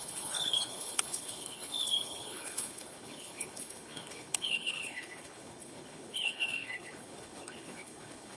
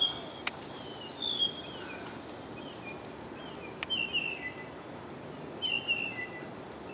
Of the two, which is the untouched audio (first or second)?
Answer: second